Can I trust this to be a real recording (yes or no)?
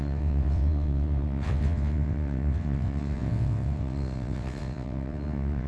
no